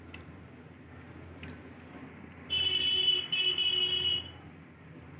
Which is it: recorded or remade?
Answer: recorded